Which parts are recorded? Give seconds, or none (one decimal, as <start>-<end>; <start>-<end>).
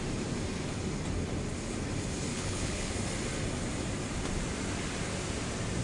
0.0-2.3; 2.9-5.8